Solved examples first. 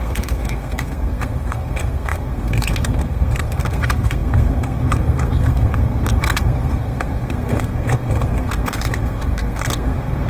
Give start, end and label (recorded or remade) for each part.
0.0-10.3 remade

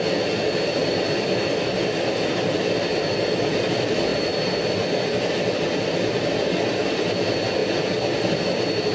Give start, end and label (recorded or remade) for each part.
0.0-0.8 recorded; 0.8-1.3 remade; 1.3-8.9 recorded

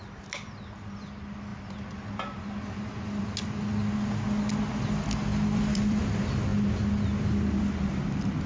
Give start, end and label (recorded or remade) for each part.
0.0-5.3 recorded; 5.3-6.0 remade; 6.0-8.5 recorded

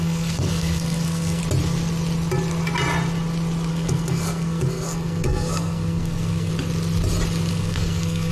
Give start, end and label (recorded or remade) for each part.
0.0-1.4 remade; 1.4-3.7 recorded; 3.7-6.5 remade; 6.5-7.5 recorded; 7.5-8.3 remade

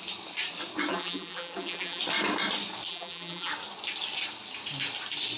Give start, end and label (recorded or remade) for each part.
0.0-0.9 recorded; 0.9-2.0 remade; 2.0-2.9 recorded; 2.9-3.5 remade; 3.5-5.4 recorded

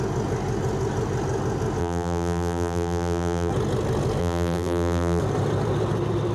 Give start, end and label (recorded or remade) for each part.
0.0-1.8 recorded; 1.8-3.5 remade; 3.5-4.2 recorded; 4.2-5.2 remade; 5.2-6.3 recorded

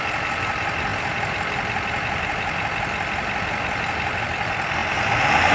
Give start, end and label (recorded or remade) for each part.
0.0-5.5 recorded

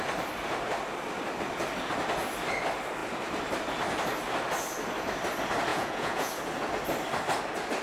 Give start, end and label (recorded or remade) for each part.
0.0-5.7 recorded; 5.7-6.3 remade; 6.3-7.8 recorded